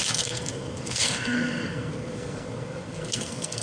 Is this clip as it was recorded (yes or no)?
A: no